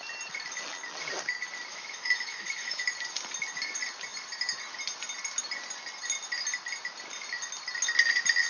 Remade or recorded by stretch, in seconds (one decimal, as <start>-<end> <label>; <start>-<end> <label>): 0.0-1.7 recorded; 1.7-2.8 remade; 2.8-8.5 recorded